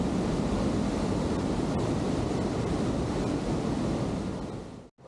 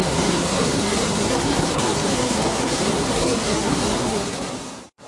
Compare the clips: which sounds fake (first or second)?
second